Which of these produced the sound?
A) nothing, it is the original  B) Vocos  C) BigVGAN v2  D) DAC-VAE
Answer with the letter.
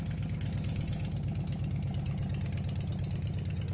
A